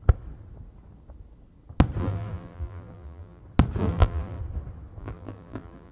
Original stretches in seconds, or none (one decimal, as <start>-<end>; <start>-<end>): 0.0-2.0; 3.4-3.8; 4.4-5.0